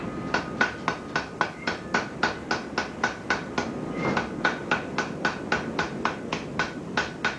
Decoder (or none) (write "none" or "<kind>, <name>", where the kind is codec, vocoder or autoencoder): none